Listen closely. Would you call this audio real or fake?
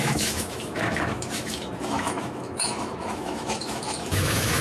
fake